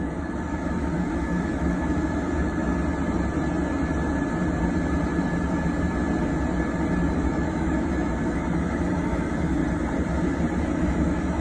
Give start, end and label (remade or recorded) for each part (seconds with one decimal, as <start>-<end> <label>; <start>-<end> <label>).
0.0-2.7 remade; 2.7-7.1 recorded; 7.1-9.6 remade; 9.6-10.6 recorded; 10.6-11.4 remade